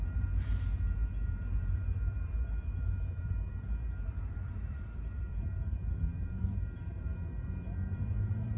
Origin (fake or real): fake